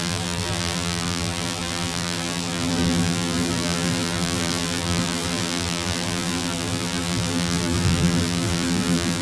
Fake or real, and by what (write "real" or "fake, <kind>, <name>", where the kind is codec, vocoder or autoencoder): fake, vocoder, BigVGAN v2